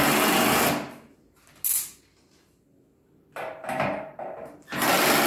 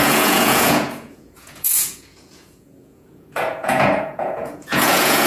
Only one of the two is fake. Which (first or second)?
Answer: second